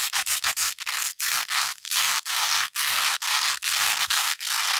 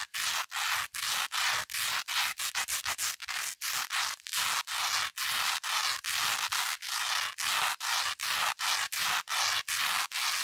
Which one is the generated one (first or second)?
first